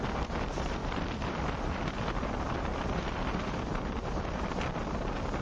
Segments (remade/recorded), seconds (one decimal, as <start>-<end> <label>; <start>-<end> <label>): 0.0-0.8 recorded; 0.8-1.9 remade; 1.9-2.7 recorded; 2.7-4.9 remade; 4.9-5.4 recorded